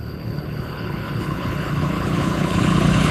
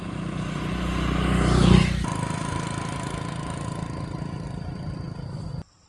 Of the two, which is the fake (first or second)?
first